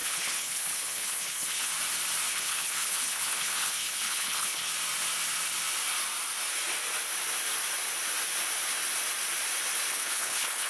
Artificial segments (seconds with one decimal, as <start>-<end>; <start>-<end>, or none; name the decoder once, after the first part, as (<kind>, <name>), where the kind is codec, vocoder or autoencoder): 0.0-1.7 (codec, HILCodec); 2.3-4.7; 9.9-10.7